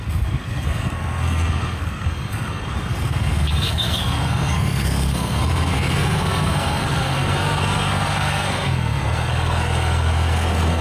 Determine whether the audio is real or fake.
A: fake